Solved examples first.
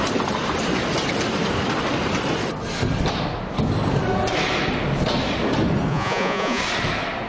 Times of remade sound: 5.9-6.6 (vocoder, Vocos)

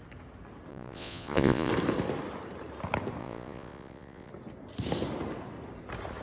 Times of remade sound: 0.7-1.7 (vocoder, Vocos); 3.2-4.3

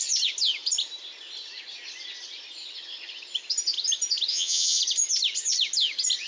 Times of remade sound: 4.3-4.8 (vocoder, Vocos)

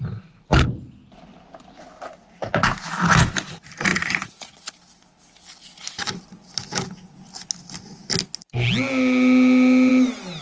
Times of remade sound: 3.9-4.7 (vocoder, Vocos)

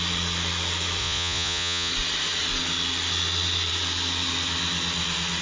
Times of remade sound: 1.0-1.9 (vocoder, Vocos)

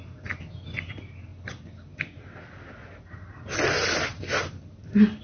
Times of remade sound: none